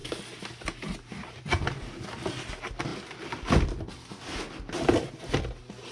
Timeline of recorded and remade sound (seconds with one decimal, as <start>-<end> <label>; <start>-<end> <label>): 0.0-5.9 recorded